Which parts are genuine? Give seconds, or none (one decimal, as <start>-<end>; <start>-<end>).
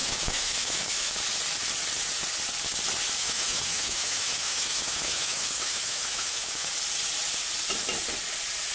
1.2-3.2; 6.7-8.7